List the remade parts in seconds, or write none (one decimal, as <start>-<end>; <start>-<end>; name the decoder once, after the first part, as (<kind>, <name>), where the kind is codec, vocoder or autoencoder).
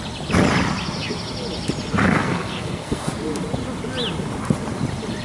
2.0-3.1 (codec, SNAC)